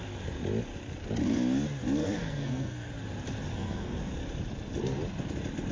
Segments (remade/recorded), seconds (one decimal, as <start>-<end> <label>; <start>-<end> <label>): 0.0-2.0 recorded; 2.0-2.9 remade; 2.9-3.5 recorded; 3.5-4.1 remade; 4.1-5.7 recorded